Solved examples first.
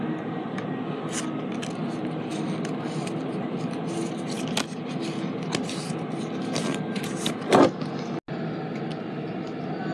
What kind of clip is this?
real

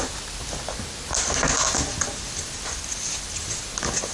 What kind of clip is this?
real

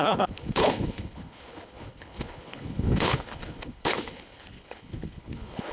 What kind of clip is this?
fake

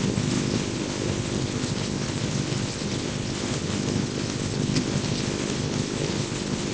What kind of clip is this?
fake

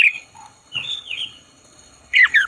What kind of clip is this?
fake